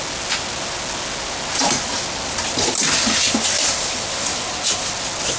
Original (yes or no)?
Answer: yes